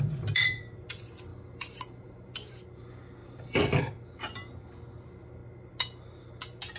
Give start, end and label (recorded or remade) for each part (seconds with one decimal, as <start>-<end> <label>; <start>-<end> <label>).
0.0-1.3 recorded; 1.3-2.6 remade; 2.6-3.2 recorded; 3.2-3.8 remade; 3.8-6.8 recorded